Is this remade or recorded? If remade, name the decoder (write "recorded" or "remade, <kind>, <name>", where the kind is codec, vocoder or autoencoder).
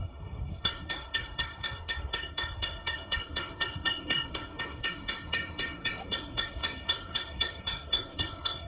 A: remade, codec, SNAC